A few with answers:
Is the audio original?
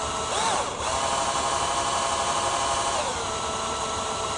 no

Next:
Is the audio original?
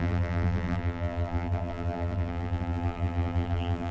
no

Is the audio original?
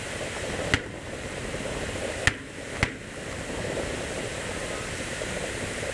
yes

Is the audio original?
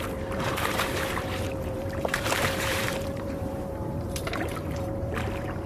no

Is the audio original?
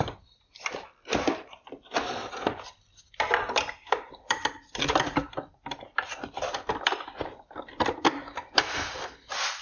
no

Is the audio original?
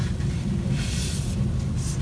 yes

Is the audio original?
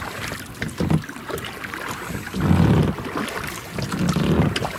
yes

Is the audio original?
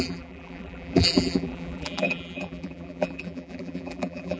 no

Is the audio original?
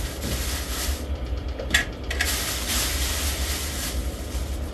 yes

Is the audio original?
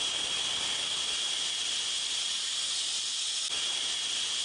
yes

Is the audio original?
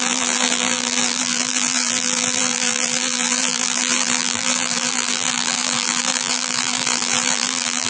no